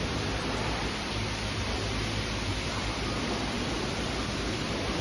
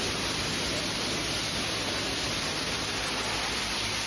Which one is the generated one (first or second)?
first